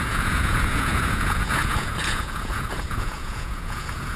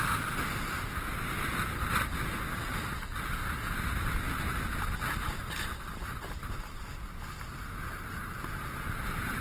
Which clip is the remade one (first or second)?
first